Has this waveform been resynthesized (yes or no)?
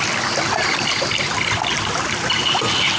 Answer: no